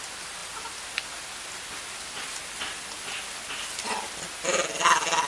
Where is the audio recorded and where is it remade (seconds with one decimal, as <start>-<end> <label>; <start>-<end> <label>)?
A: 0.0-5.3 recorded